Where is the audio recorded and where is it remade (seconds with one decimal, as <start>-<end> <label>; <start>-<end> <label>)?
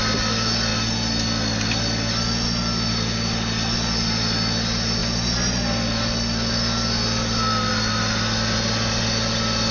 0.0-9.7 recorded